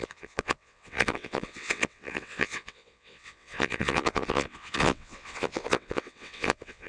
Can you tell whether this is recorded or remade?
remade